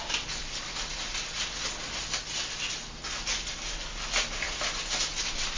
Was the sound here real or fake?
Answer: real